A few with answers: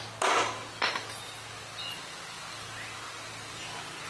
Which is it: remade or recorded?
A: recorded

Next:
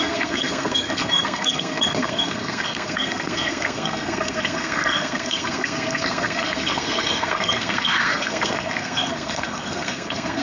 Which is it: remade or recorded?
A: remade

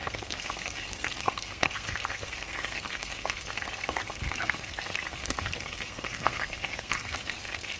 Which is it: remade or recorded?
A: remade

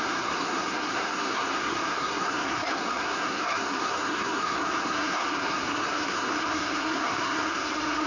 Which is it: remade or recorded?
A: remade